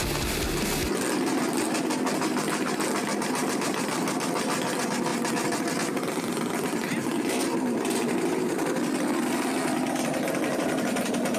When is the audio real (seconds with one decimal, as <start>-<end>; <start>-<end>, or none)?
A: 0.0-3.0; 5.1-6.0